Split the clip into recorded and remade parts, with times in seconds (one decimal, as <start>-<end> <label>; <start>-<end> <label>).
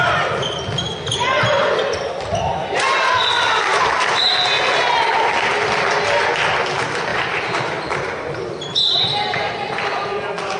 0.0-2.5 recorded; 2.5-3.2 remade; 3.2-7.1 recorded; 7.1-9.5 remade; 9.5-10.6 recorded